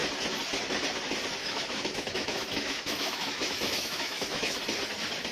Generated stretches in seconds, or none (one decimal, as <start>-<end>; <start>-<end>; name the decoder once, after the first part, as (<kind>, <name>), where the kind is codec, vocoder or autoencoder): 1.4-4.6 (autoencoder, DAC-VAE)